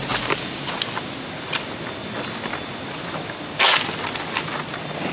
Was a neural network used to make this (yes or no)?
no